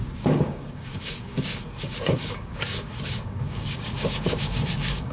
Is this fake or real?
fake